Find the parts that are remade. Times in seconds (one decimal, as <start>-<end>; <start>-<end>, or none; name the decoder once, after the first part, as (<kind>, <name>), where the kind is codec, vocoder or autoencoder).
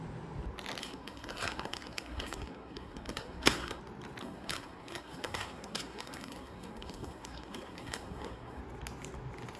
0.8-3.8 (codec, SNAC); 4.2-8.6